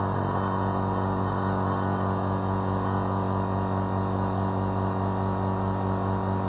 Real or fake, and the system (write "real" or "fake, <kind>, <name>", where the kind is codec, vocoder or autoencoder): real